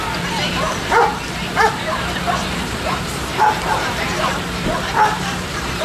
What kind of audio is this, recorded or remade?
remade